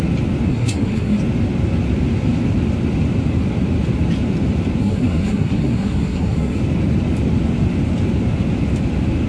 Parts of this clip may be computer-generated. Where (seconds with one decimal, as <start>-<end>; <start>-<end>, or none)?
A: 0.5-1.2; 4.8-6.6